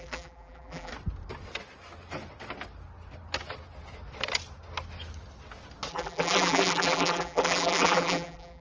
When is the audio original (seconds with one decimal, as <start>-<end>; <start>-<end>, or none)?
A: 0.9-5.9